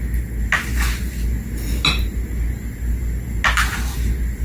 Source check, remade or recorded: recorded